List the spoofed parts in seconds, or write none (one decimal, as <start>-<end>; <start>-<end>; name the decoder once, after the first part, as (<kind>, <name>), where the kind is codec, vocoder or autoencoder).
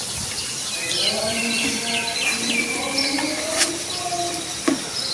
none